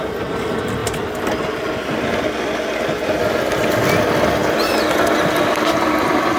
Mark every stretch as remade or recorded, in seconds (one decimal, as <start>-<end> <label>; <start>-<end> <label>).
0.0-6.4 recorded